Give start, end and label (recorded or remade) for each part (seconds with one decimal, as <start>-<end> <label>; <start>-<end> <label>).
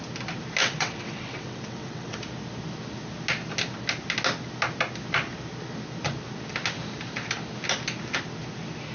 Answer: 0.0-0.6 recorded; 0.6-2.2 remade; 2.2-8.9 recorded